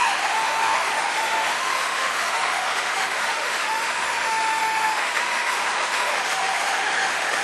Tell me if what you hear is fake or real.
fake